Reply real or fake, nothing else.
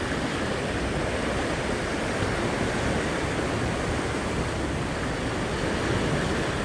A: real